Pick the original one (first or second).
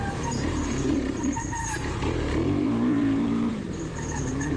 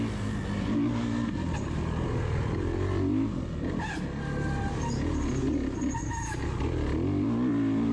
second